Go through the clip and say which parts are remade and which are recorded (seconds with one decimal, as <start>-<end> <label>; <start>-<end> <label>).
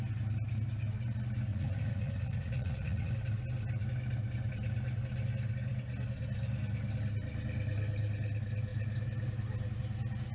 0.0-1.5 recorded; 1.5-3.1 remade; 3.1-10.3 recorded